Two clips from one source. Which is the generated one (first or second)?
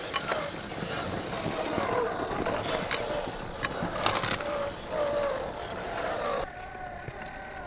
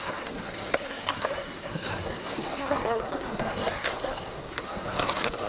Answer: second